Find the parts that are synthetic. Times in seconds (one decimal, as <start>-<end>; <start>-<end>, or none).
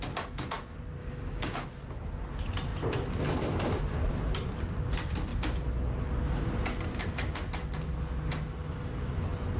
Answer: 1.0-1.7